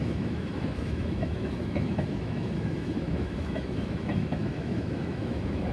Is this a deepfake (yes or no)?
yes